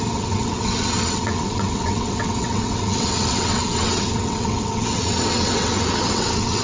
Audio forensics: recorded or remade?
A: remade